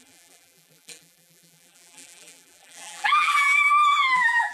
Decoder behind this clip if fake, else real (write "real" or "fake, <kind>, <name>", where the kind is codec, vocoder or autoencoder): fake, vocoder, BigVGAN v2